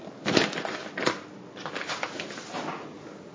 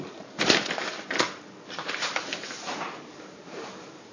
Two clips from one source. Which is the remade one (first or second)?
second